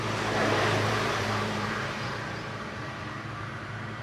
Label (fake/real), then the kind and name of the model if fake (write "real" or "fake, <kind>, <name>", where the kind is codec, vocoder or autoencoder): fake, vocoder, BigVGAN v2